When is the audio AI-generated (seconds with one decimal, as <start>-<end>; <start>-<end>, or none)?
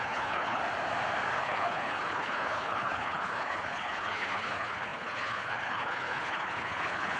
0.0-0.6; 1.4-7.2